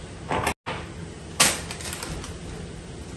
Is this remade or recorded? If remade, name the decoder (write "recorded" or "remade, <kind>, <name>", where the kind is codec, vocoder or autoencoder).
recorded